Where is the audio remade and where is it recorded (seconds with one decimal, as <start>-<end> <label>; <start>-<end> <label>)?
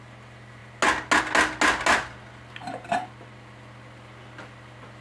0.0-5.0 recorded